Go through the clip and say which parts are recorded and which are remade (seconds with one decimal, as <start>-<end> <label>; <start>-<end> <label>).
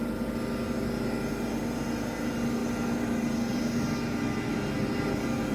0.0-2.6 recorded; 2.6-3.6 remade; 3.6-5.5 recorded